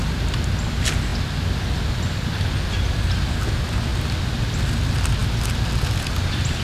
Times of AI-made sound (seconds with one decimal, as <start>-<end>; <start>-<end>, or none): none